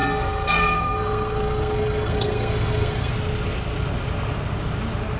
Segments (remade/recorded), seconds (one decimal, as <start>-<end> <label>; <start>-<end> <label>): 0.0-3.1 remade; 3.1-5.2 recorded